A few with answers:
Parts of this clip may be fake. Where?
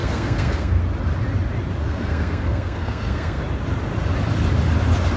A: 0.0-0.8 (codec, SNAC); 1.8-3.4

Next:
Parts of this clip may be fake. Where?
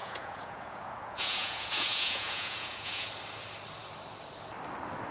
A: 0.0-3.1 (vocoder, Vocos)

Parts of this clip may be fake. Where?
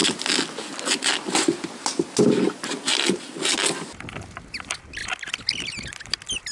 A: none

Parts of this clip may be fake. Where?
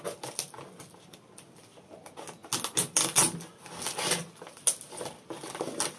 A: none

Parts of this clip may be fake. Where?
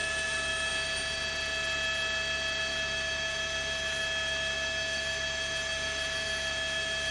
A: 0.0-0.7 (autoencoder, DAC-VAE); 2.7-7.1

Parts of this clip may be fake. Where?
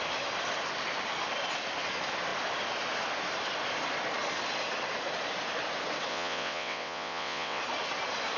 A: 6.1-7.6 (vocoder, WaveNeXt)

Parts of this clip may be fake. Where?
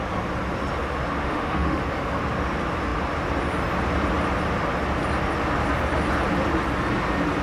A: 1.2-1.8 (autoencoder, DAC-VAE)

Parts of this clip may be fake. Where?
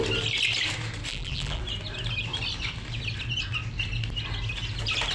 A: 1.1-1.6 (vocoder, BigVGAN v2)